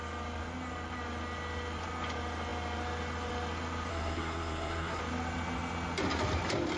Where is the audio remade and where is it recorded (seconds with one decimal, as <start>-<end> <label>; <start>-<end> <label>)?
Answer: 0.0-3.9 recorded; 3.9-5.0 remade; 5.0-6.8 recorded